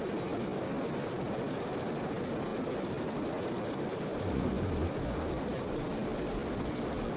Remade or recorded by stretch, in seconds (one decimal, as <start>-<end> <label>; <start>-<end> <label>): 0.0-7.2 recorded